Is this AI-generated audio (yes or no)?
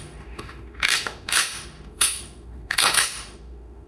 yes